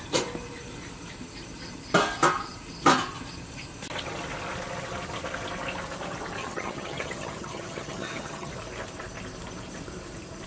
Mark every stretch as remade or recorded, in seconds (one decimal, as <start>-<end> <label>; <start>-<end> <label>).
0.0-6.4 recorded; 6.4-8.5 remade; 8.5-10.5 recorded